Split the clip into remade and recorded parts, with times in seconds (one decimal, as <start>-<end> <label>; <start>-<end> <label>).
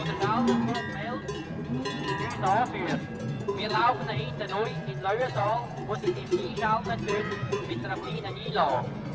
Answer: 0.0-3.3 recorded; 3.3-9.1 remade